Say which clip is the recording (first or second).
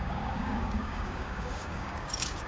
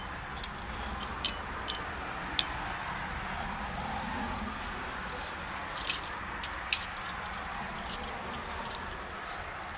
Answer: second